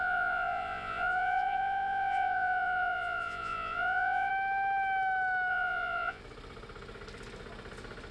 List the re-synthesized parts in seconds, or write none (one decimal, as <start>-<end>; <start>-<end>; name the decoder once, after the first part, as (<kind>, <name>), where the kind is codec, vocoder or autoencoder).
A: 0.0-4.3 (vocoder, Vocos); 5.5-6.2